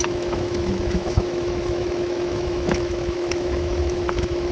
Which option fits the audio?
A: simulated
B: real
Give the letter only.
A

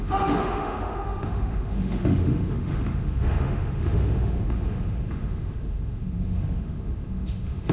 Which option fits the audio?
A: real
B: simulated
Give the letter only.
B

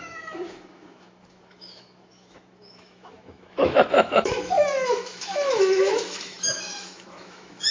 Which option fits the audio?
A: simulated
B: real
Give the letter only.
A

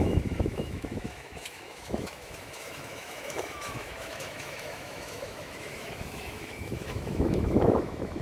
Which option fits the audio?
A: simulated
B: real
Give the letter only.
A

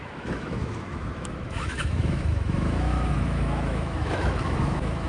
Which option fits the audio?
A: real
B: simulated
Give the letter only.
B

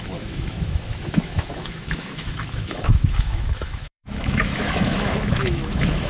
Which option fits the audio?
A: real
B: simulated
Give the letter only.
B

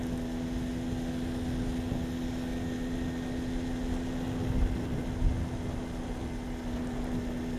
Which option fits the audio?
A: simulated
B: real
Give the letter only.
B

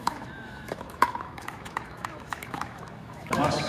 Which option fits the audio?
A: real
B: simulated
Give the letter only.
B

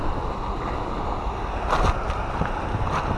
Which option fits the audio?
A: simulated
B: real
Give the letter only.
B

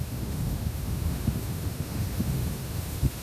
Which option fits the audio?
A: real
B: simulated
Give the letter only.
B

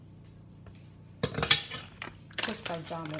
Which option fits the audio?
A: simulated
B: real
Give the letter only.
B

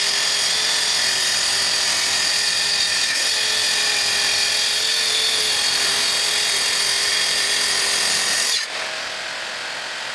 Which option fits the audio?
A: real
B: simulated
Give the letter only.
A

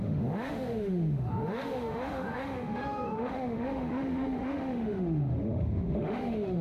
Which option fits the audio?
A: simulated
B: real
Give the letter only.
A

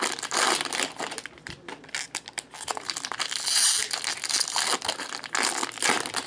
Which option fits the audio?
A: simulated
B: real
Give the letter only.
B